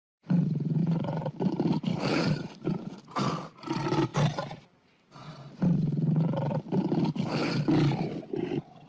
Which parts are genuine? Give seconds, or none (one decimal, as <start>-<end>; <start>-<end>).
0.0-0.8; 1.3-1.9; 2.5-8.9

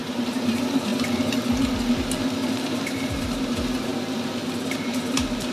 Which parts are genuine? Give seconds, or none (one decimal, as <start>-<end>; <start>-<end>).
0.9-2.5; 3.9-4.5

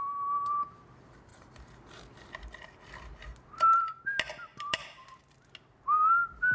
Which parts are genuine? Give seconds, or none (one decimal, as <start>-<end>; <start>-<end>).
0.0-1.3; 4.0-4.5; 5.2-6.5

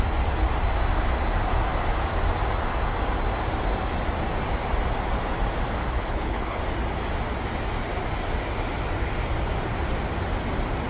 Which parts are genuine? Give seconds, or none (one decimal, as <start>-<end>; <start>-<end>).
0.0-5.8; 6.6-10.9

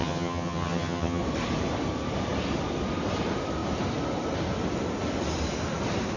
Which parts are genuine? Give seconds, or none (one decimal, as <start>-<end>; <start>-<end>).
1.2-6.2

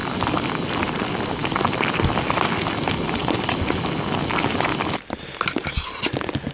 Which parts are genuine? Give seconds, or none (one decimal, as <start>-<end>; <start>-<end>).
0.0-6.5

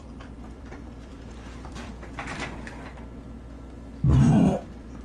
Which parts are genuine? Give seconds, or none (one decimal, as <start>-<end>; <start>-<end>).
2.9-4.5